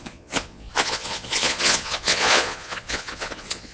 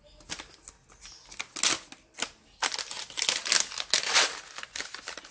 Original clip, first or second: second